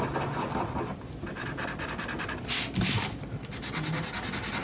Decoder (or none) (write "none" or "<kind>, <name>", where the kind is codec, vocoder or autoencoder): none